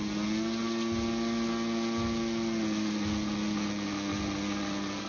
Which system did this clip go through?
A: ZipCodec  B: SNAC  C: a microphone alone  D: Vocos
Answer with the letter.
C